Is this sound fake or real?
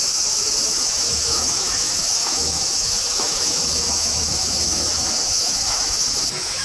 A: fake